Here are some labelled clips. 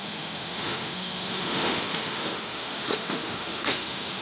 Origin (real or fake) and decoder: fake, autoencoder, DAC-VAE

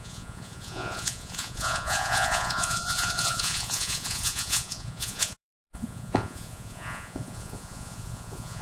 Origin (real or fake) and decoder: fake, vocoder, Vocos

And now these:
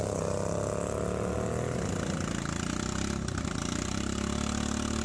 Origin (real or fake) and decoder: real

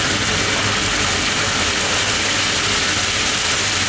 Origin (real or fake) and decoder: real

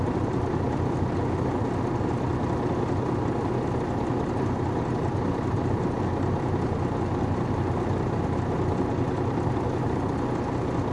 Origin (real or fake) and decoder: real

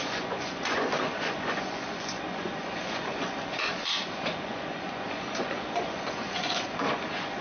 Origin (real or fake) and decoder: fake, vocoder, Vocos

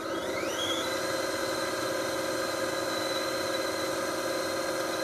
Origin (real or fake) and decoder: real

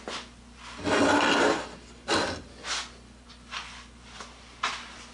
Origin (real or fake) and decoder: real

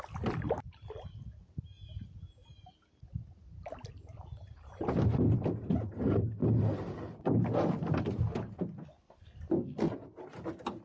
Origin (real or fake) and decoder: real